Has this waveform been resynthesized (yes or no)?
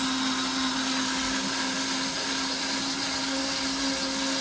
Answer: no